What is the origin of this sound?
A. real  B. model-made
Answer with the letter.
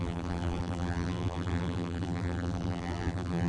B